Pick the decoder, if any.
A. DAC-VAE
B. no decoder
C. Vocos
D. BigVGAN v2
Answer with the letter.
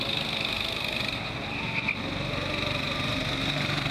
B